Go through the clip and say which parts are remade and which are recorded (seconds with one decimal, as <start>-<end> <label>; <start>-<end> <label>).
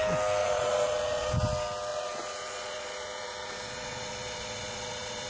0.0-0.4 recorded; 0.4-1.3 remade; 1.3-1.9 recorded; 1.9-5.3 remade